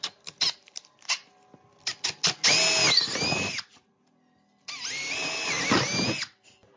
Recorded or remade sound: recorded